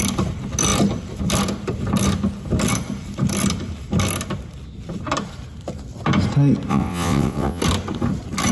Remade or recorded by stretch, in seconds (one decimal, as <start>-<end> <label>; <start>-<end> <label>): 0.0-6.7 recorded; 6.7-7.6 remade; 7.6-8.5 recorded